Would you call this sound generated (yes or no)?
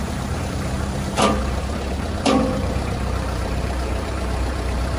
yes